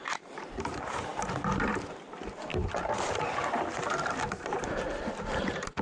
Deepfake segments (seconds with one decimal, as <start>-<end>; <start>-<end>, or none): none